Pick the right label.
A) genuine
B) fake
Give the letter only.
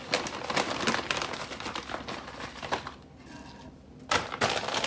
A